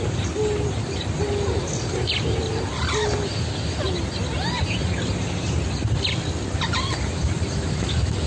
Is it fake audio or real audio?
real